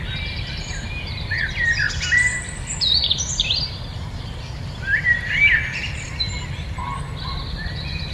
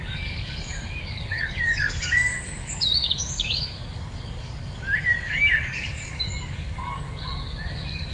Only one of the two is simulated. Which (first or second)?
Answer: second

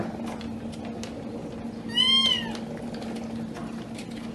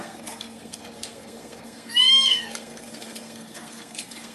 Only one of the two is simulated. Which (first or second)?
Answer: second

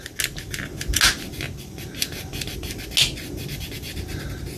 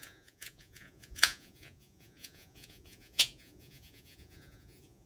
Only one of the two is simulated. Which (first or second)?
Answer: second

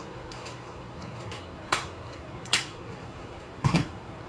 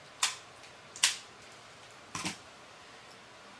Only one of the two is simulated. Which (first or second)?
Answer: first